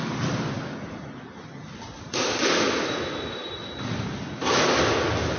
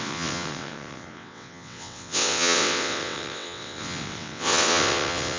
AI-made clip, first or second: second